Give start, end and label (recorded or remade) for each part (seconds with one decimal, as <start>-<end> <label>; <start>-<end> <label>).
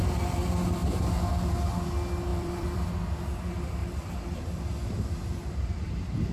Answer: 0.0-2.3 recorded; 2.3-2.9 remade; 2.9-3.8 recorded; 3.8-5.1 remade; 5.1-6.3 recorded